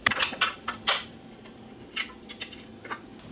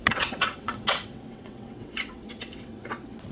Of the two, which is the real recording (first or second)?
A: first